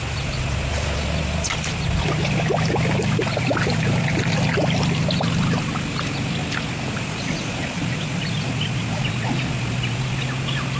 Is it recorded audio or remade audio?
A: recorded